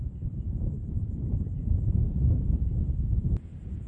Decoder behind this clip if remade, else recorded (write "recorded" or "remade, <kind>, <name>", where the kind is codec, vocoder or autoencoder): remade, vocoder, BigVGAN v2